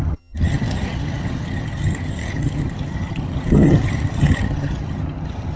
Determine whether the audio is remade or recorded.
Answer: remade